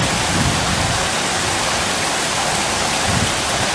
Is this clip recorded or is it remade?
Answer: recorded